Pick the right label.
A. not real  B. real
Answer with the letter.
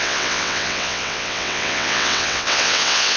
A